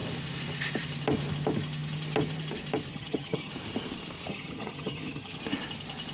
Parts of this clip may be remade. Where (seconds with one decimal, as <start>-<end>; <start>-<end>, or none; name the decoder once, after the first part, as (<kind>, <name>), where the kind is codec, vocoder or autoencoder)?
2.9-3.5 (vocoder, HiFi-GAN); 4.3-5.4